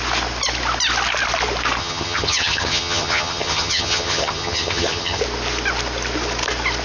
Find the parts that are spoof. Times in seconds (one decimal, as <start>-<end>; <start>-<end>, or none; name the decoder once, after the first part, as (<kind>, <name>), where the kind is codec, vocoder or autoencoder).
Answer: 1.8-5.2 (vocoder, HiFi-GAN)